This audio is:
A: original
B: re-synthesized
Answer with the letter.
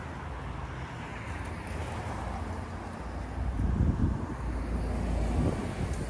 A